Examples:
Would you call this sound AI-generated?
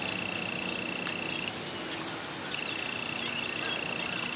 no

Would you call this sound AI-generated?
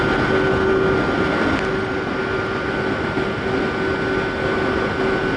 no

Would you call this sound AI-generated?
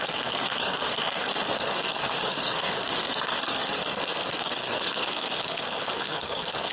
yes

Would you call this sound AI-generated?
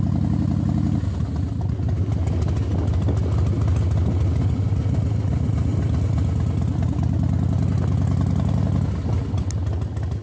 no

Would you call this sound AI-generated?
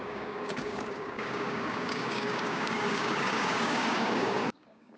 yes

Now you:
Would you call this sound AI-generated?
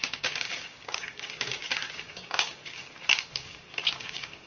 yes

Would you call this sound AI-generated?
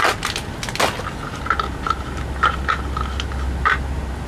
no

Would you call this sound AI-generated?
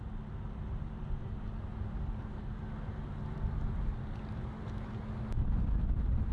no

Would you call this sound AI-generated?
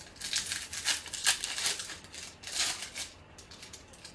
no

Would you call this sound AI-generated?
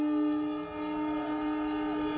no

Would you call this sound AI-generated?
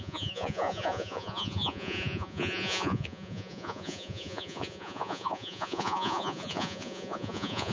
yes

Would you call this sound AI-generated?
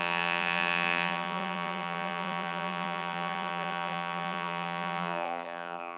yes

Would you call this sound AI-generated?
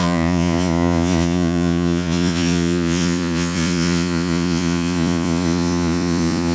yes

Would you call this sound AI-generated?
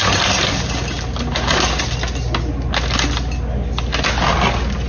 no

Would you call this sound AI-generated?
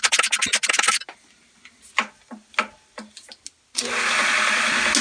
no